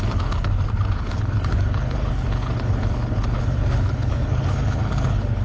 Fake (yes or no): yes